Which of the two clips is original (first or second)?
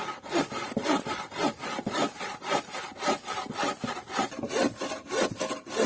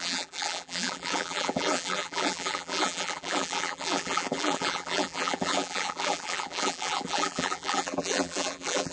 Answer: first